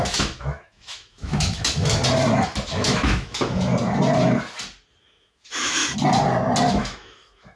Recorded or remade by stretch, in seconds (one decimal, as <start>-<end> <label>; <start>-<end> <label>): 0.0-2.0 remade; 2.0-2.7 recorded; 2.7-3.7 remade; 3.7-5.0 recorded; 5.0-5.8 remade; 5.8-6.7 recorded; 6.7-7.6 remade